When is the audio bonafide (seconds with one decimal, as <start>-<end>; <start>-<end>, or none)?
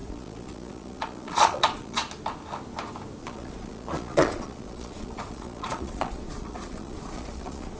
2.0-3.2